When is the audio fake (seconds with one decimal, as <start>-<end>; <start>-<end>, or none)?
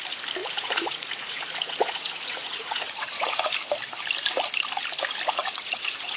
0.4-3.5; 5.4-6.2